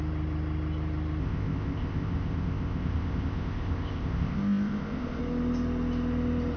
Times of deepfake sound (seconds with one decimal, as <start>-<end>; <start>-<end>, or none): 1.2-5.2